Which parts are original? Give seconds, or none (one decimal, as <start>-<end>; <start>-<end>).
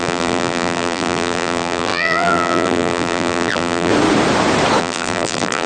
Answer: 3.9-4.8